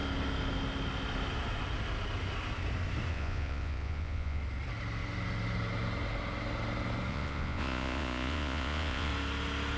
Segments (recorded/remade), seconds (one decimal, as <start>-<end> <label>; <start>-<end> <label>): 0.0-3.1 recorded; 3.1-4.4 remade; 4.4-7.1 recorded; 7.1-9.1 remade; 9.1-9.8 recorded